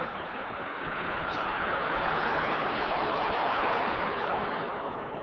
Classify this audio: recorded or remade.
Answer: remade